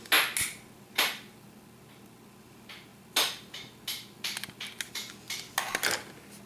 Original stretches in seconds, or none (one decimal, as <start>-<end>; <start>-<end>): 0.0-6.5